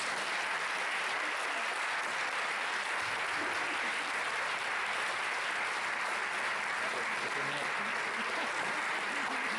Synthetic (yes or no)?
no